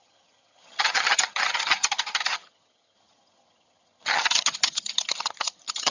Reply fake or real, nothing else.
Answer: fake